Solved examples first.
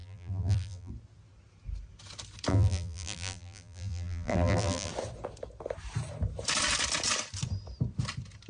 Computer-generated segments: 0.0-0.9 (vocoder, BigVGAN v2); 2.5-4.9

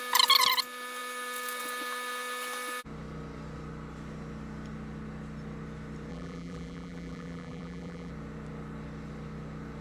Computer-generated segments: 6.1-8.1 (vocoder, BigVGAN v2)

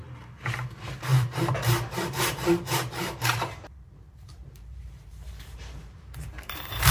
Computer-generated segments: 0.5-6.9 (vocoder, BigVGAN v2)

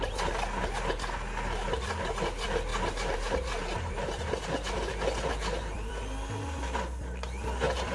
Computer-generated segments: 2.7-5.9 (vocoder, BigVGAN v2)

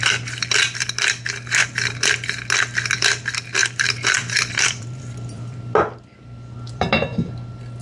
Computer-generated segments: 1.6-2.1 (vocoder, BigVGAN v2); 3.6-7.3